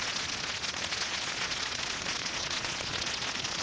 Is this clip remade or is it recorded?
remade